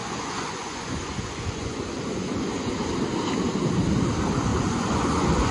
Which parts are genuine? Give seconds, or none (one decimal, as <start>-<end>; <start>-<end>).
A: 2.7-4.5